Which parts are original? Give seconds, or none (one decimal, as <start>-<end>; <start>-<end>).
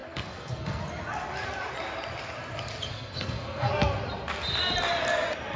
0.8-2.9; 3.7-5.6